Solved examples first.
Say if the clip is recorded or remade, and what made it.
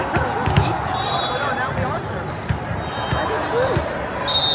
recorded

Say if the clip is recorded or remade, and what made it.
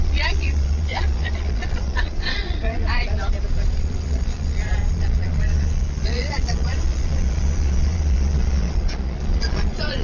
remade, vocoder, Vocos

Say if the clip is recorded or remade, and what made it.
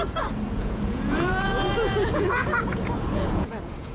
remade, vocoder, Vocos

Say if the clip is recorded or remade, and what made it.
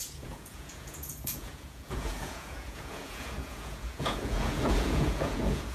remade, vocoder, Vocos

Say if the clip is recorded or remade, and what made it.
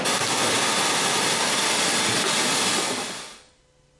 recorded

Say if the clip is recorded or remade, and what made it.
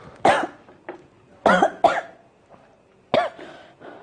recorded